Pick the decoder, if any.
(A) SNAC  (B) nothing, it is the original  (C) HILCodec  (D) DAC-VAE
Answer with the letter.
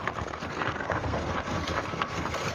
A